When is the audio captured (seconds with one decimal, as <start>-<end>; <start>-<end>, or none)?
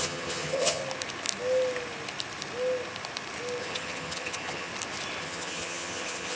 0.8-3.6; 4.7-5.2